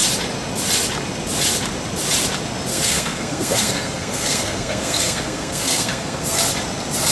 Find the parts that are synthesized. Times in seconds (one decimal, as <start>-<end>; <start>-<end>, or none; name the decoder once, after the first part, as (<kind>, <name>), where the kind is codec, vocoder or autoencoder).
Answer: 2.7-6.4 (codec, SNAC)